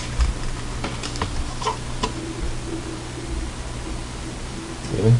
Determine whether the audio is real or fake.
real